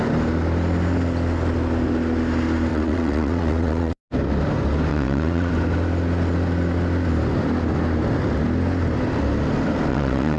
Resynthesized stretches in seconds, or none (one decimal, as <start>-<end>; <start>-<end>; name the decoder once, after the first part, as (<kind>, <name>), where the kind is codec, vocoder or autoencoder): 2.7-4.0 (vocoder, WaveNeXt); 4.9-5.5; 9.9-10.4